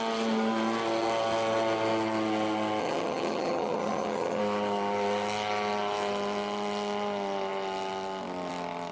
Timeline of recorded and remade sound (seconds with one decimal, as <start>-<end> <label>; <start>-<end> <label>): 0.0-2.8 recorded; 2.8-4.4 remade; 4.4-8.9 recorded